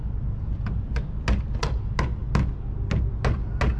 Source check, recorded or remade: recorded